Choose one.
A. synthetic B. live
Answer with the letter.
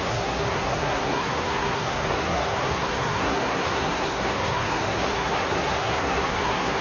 A